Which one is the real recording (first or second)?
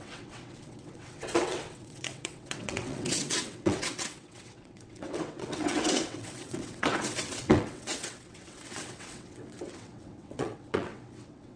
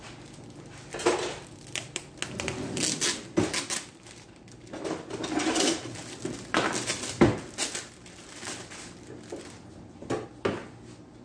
second